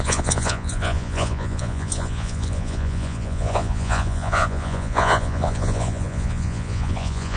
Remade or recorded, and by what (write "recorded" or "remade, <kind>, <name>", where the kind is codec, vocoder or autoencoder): remade, vocoder, Vocos